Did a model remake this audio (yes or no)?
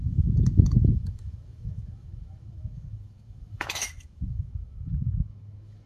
yes